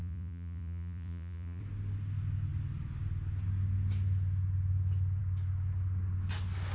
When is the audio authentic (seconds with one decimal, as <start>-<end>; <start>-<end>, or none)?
1.6-6.7